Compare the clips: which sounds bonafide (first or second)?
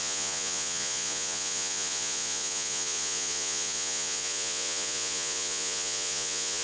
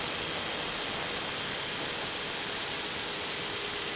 second